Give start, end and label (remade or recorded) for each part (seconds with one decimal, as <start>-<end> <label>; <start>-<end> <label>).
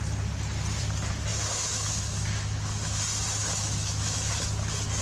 0.0-1.3 recorded; 1.3-3.0 remade; 3.0-3.4 recorded; 3.4-4.3 remade; 4.3-5.0 recorded